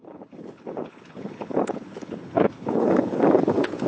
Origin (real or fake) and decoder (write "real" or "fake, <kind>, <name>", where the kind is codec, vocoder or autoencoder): fake, codec, HILCodec